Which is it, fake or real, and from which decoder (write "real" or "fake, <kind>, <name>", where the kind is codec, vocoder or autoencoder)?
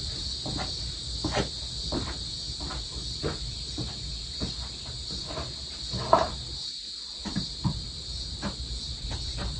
real